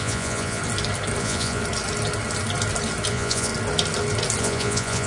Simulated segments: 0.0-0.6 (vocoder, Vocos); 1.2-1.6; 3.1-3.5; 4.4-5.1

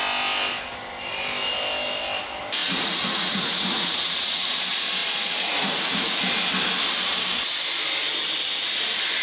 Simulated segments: 2.6-4.6 (vocoder, Vocos); 5.0-6.2

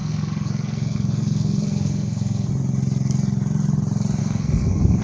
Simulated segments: 0.0-2.5 (codec, SNAC); 4.2-5.0

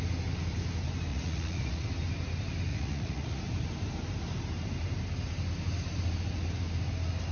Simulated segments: 1.1-1.8 (vocoder, Vocos); 2.7-3.4

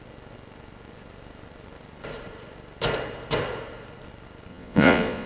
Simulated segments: 4.5-5.3 (vocoder, Vocos)

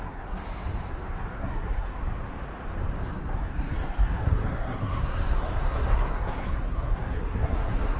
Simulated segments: 0.0-0.4 (codec, SNAC); 0.9-2.0; 3.1-8.0

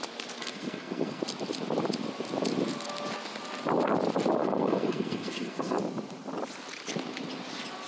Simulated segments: 0.4-1.2 (codec, SNAC); 4.4-5.8

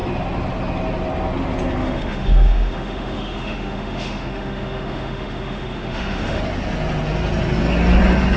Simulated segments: 1.8-6.4 (autoencoder, DAC-VAE)